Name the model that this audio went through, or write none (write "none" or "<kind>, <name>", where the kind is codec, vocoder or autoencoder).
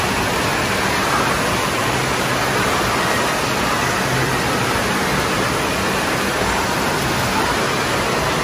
none